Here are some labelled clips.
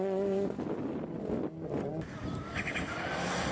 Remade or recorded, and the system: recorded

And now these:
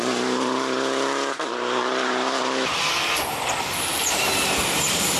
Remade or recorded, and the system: remade, vocoder, BigVGAN v2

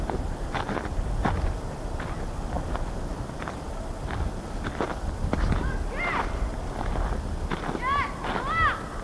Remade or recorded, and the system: recorded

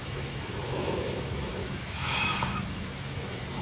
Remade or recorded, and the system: remade, autoencoder, DAC-VAE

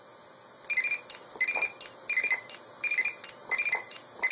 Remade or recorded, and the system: recorded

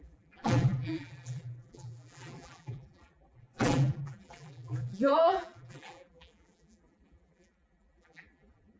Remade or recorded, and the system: remade, vocoder, BigVGAN v2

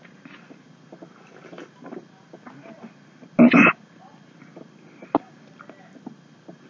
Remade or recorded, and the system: recorded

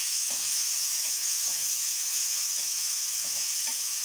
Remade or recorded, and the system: remade, autoencoder, DAC-VAE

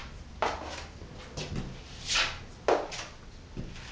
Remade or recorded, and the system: recorded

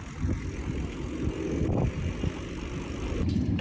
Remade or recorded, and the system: recorded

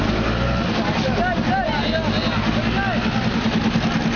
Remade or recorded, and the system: recorded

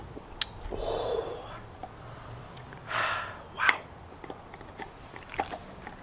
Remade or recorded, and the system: recorded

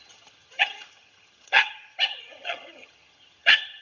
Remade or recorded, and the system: remade, vocoder, HiFi-GAN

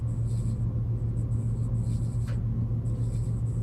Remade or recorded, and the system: recorded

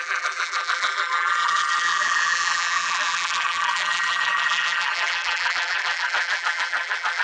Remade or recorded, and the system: remade, vocoder, BigVGAN v2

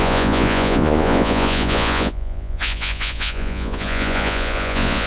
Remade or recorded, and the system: remade, vocoder, Vocos